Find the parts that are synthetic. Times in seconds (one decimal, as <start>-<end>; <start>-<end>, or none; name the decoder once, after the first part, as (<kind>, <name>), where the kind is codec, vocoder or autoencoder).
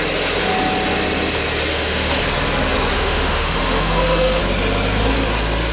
1.7-2.2 (autoencoder, DAC-VAE); 2.9-4.4